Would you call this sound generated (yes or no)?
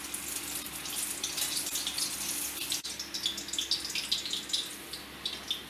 no